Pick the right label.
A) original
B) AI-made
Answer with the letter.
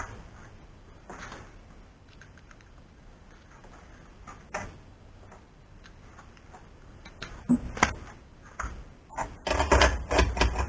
A